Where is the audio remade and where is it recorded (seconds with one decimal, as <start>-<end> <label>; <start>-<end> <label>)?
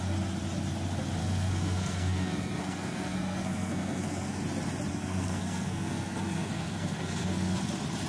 0.0-1.2 recorded; 1.2-4.4 remade; 4.4-4.9 recorded; 4.9-7.6 remade; 7.6-8.1 recorded